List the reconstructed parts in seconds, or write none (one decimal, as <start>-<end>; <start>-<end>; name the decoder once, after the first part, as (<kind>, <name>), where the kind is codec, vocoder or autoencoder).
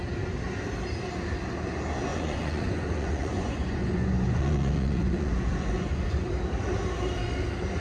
2.1-6.3 (vocoder, Vocos)